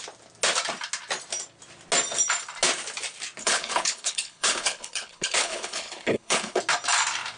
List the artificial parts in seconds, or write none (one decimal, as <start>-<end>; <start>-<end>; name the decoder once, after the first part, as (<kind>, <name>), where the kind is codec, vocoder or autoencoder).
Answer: 3.4-6.6 (codec, HILCodec)